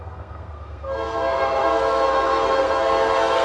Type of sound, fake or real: fake